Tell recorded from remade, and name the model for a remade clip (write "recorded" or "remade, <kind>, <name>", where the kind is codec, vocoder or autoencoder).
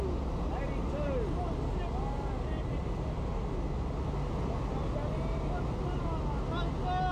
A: recorded